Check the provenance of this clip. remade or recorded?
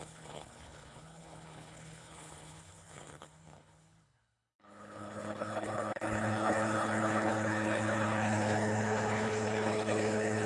remade